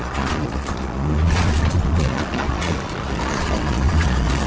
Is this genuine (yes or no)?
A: no